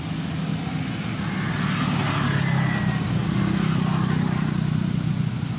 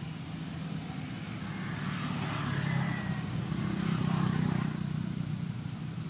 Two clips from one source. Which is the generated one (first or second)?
second